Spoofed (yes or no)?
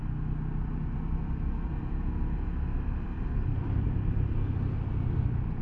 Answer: no